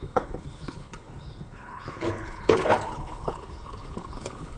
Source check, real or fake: fake